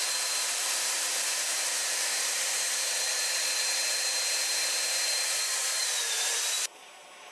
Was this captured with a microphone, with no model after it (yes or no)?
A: no